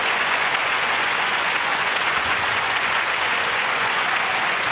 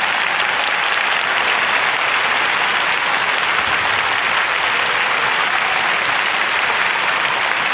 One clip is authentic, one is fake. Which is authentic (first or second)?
second